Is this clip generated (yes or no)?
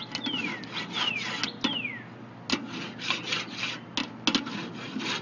no